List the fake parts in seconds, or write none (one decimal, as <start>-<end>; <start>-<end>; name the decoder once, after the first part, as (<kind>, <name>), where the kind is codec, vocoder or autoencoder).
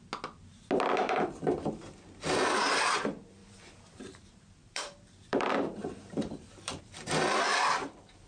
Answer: 3.4-6.8 (vocoder, BigVGAN v2)